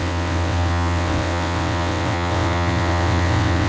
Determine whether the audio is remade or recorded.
remade